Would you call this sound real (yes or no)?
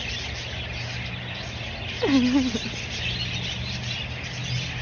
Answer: yes